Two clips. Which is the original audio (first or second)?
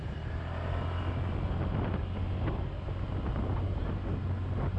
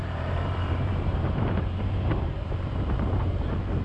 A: first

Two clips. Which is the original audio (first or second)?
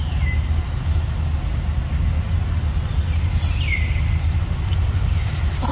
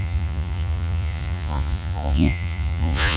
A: first